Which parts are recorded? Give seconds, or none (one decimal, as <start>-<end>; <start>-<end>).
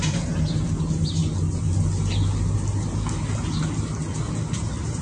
0.0-5.0